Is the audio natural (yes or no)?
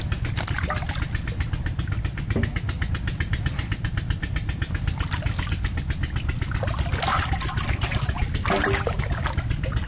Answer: yes